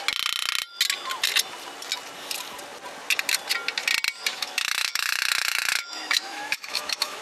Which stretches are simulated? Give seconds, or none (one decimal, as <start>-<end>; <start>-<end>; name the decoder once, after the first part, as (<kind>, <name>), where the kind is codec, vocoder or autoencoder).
4.3-7.2 (autoencoder, DAC-VAE)